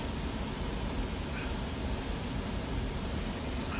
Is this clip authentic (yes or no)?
yes